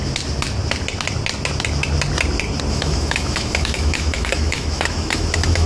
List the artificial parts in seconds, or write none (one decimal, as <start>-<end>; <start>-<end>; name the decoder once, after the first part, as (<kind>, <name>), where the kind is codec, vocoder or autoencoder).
2.7-5.7 (autoencoder, DAC-VAE)

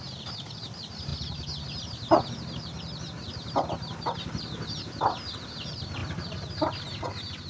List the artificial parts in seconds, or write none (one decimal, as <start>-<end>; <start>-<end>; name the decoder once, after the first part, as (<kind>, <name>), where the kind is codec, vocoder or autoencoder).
none